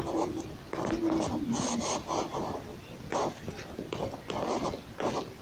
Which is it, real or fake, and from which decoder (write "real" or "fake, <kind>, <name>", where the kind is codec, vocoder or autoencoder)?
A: real